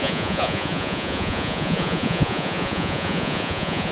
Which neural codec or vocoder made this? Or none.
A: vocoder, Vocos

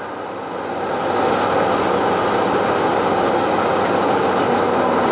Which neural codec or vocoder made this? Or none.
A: none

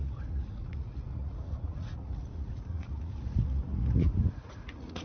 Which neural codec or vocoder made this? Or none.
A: vocoder, Vocos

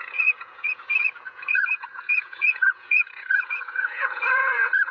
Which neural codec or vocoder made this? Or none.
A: vocoder, Vocos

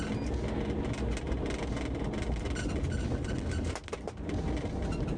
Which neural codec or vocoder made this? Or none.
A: none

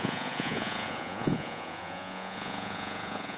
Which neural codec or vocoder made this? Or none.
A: vocoder, Vocos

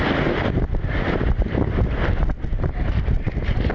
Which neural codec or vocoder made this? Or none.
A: none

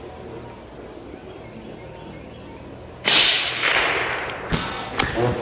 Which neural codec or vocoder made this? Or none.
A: none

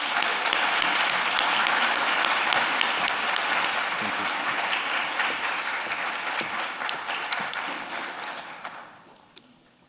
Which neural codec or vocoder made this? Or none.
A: none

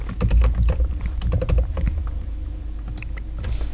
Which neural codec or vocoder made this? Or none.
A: none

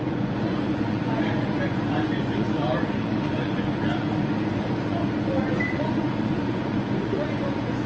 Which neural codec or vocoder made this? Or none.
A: vocoder, Vocos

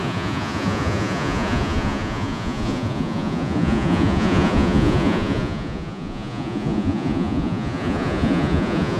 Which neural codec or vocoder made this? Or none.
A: vocoder, Vocos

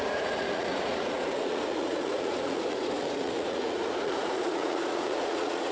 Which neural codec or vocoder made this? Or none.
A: vocoder, Vocos